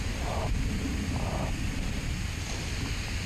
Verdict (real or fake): real